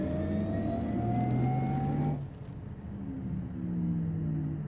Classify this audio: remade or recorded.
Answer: recorded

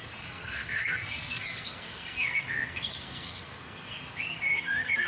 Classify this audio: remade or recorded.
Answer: remade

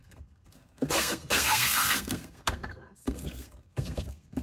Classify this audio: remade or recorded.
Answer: remade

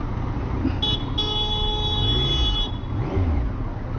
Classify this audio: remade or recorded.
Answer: recorded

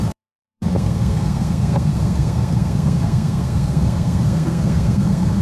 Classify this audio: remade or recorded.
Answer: remade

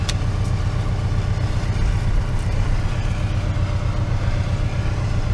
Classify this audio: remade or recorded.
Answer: recorded